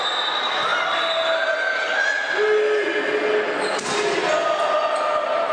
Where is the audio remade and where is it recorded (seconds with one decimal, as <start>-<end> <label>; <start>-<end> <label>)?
0.0-5.5 recorded